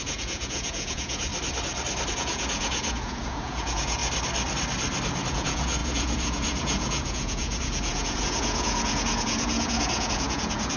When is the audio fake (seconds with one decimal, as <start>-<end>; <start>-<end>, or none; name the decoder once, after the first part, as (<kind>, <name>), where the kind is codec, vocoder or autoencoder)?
0.0-1.3 (vocoder, Vocos); 2.1-4.0; 5.3-10.8

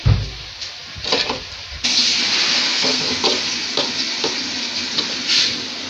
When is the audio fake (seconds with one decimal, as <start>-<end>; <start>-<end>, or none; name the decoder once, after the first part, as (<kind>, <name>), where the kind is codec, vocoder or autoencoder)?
2.5-3.1 (codec, SNAC)